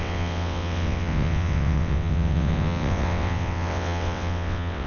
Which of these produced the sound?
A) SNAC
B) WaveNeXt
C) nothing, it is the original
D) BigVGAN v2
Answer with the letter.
B